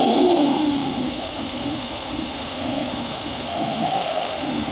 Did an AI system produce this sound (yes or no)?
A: yes